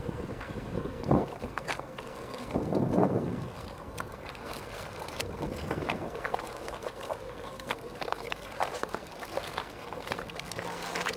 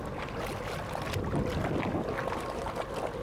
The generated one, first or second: first